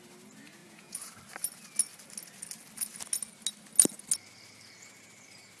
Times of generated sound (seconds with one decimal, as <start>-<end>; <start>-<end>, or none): 0.6-1.1